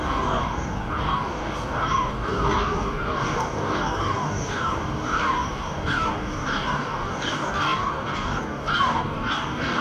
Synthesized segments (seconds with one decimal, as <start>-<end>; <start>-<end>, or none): 0.0-9.8